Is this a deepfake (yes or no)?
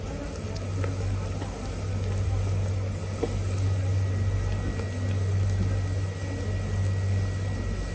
no